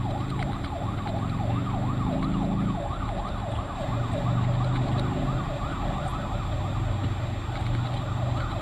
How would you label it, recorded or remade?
recorded